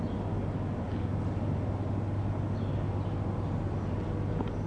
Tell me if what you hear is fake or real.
real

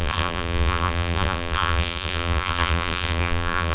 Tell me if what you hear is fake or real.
fake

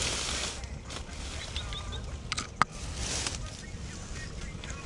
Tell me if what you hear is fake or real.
real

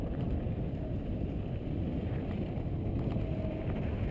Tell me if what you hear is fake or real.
real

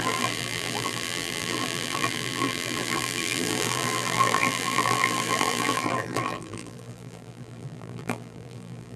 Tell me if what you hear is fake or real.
fake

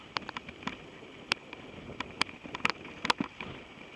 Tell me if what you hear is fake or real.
real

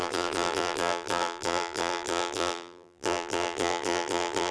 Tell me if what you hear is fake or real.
fake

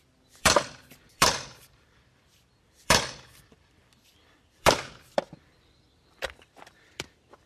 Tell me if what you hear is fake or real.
fake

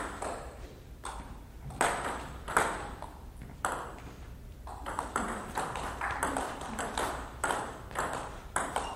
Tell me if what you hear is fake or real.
fake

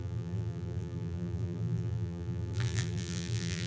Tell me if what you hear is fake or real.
fake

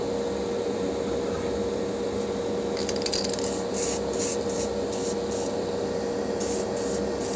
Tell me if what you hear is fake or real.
real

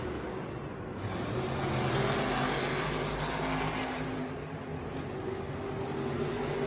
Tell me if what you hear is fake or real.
real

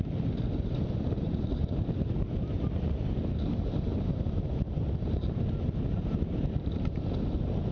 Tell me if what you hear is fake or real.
fake